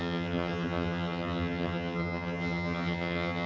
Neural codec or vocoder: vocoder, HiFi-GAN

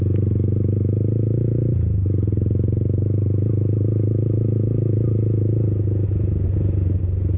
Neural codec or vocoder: none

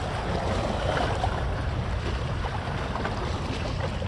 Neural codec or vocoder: none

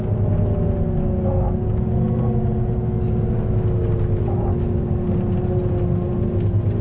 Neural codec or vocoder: none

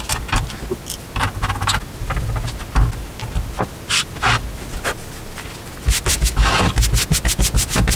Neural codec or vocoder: none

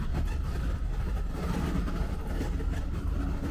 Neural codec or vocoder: none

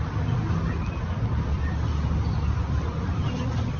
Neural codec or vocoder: none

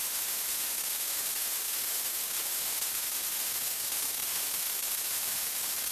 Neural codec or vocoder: autoencoder, DAC-VAE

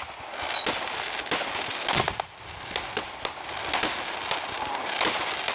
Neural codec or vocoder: none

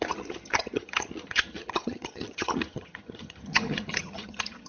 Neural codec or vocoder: vocoder, HiFi-GAN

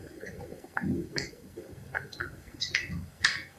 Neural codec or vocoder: codec, SNAC